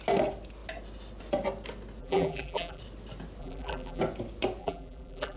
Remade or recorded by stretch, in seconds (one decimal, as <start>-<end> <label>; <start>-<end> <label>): 0.0-2.0 recorded; 2.0-2.8 remade; 2.8-3.4 recorded; 3.4-4.0 remade; 4.0-4.6 recorded; 4.6-5.4 remade